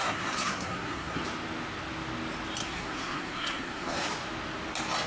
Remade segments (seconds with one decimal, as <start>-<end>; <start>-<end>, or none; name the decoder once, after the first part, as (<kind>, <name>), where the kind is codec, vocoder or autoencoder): 0.0-1.2 (codec, SNAC); 2.6-4.1